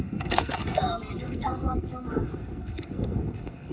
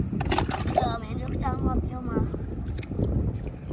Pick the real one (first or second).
second